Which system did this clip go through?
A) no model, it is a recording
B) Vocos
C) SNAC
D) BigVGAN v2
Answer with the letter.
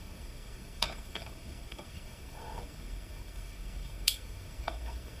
C